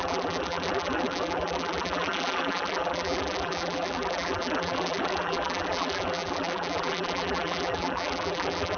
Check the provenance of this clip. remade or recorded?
remade